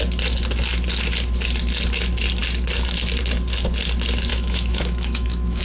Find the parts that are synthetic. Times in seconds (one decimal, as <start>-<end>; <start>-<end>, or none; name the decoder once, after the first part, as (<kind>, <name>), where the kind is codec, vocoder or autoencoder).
4.3-5.6 (autoencoder, DAC-VAE)